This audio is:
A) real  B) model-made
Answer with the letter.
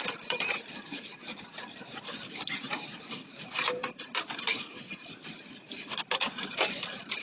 B